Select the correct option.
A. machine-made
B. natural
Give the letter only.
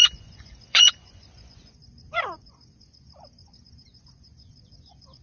A